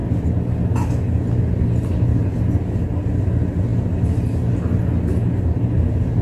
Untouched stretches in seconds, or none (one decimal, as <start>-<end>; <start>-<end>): 0.0-6.2